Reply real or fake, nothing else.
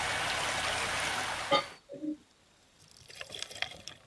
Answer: real